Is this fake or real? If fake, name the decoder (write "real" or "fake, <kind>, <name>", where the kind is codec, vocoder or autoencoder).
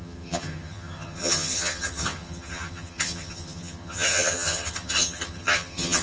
fake, vocoder, HiFi-GAN